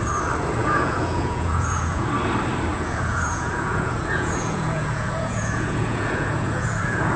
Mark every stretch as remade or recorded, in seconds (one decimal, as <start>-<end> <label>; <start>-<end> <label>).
0.0-0.6 recorded; 0.6-2.1 remade; 2.1-2.7 recorded; 2.7-7.2 remade